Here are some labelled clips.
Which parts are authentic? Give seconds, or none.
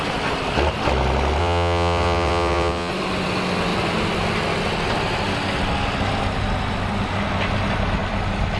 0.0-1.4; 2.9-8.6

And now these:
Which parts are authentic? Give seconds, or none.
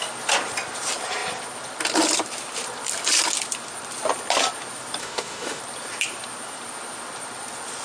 0.0-5.0; 5.6-7.8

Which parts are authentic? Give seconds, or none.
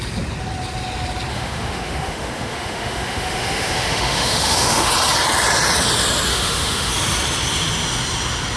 0.0-1.3; 4.9-6.3; 6.9-8.6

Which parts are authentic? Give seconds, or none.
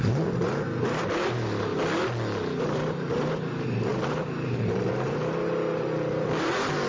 1.7-2.6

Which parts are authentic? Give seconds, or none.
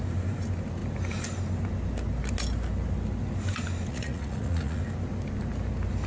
0.0-3.9; 4.8-6.1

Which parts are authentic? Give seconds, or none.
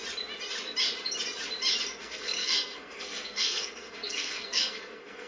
0.0-2.0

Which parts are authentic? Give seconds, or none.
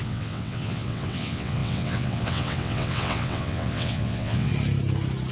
4.5-5.3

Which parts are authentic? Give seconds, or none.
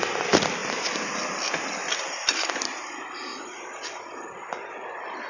0.6-1.7